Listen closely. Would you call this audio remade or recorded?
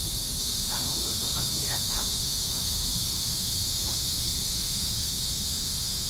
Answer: remade